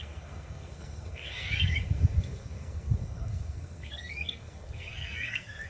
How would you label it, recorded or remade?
remade